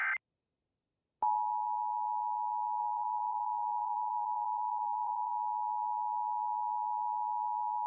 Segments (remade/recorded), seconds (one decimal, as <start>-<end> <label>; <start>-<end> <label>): 0.0-2.8 recorded; 2.8-5.3 remade; 5.3-7.9 recorded